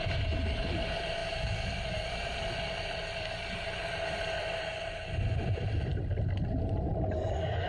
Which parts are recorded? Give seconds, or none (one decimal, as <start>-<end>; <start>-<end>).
1.2-3.5; 5.9-6.9